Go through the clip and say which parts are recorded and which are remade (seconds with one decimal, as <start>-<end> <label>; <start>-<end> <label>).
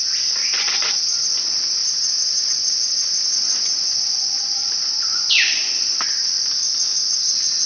0.0-0.4 recorded; 0.4-1.0 remade; 1.0-3.4 recorded; 3.4-4.0 remade; 4.0-5.1 recorded; 5.1-6.2 remade; 6.2-7.7 recorded